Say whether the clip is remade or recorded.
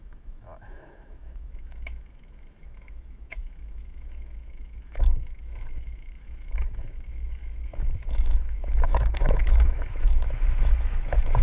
remade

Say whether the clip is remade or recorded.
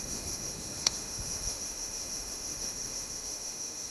remade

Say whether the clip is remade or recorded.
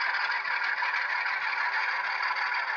recorded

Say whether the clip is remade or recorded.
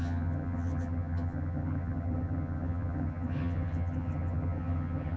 remade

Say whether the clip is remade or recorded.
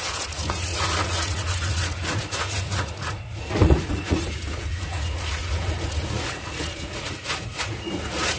remade